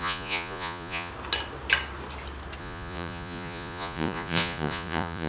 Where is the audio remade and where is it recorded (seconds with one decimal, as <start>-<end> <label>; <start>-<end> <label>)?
0.0-1.1 remade; 1.1-2.6 recorded; 2.6-5.3 remade